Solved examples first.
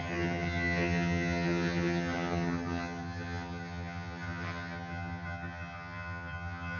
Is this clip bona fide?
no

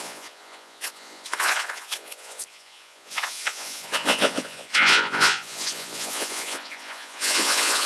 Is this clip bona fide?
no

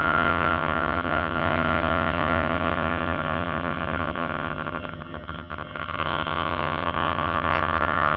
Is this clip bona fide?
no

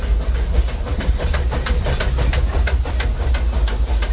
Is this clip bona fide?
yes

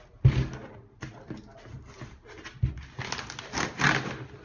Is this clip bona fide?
yes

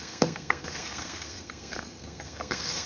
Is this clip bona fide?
no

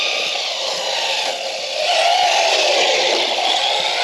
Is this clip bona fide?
yes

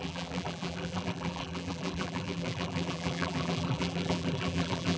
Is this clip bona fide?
no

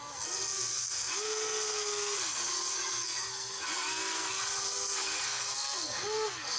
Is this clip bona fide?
no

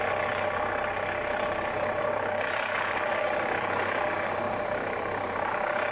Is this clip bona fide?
yes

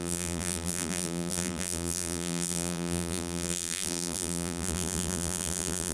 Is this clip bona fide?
no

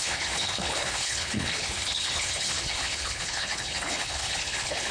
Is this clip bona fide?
no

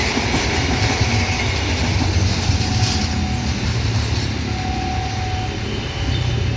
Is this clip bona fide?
yes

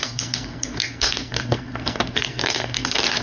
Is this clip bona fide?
no